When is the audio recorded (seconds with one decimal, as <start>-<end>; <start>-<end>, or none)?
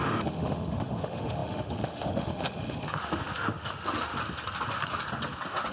4.2-5.7